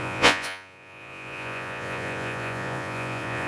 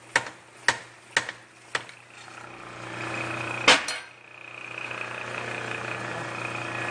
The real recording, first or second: second